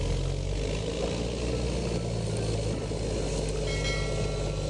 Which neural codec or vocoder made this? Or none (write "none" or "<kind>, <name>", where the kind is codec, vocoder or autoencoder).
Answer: none